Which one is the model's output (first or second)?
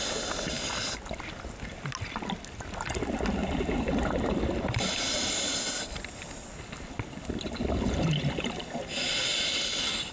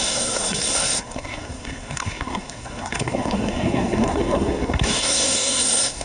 second